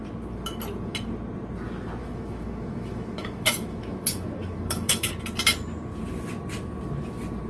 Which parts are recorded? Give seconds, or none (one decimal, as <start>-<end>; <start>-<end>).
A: 0.0-2.0; 5.1-7.5